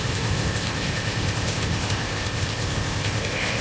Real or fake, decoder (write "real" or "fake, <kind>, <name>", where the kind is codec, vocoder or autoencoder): fake, codec, ZipCodec